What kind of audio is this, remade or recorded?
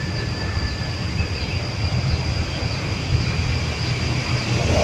remade